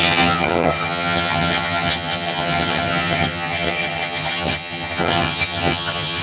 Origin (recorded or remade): remade